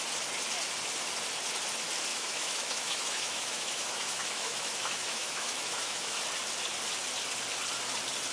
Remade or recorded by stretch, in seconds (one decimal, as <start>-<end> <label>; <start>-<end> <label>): 0.0-2.1 recorded; 2.1-6.2 remade; 6.2-8.3 recorded